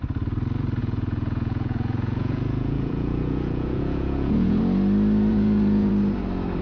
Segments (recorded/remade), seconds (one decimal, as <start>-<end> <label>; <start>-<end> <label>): 0.0-0.8 recorded; 0.8-4.6 remade; 4.6-5.3 recorded; 5.3-5.9 remade; 5.9-6.6 recorded